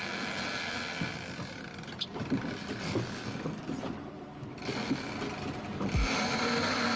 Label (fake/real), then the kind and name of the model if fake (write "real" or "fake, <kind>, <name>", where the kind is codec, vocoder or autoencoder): real